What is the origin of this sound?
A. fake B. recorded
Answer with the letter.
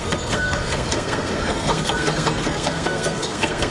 A